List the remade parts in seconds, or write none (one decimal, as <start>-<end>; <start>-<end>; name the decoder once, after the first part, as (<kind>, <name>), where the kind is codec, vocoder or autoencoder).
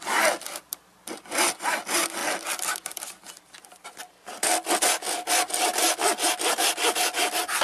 none